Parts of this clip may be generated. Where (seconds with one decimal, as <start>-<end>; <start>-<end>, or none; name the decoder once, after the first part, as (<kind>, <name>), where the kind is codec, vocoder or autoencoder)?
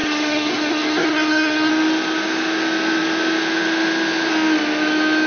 0.0-1.7 (codec, SNAC)